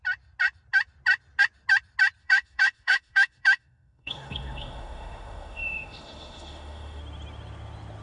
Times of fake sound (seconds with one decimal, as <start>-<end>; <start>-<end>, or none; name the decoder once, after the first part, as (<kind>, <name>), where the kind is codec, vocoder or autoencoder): 2.2-7.0 (autoencoder, DAC-VAE)